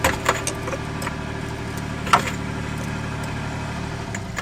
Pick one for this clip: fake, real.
real